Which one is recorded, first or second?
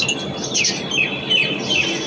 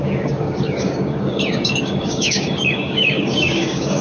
first